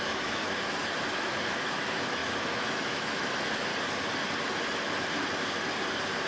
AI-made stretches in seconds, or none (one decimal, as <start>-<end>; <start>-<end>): 0.0-0.4; 1.0-3.7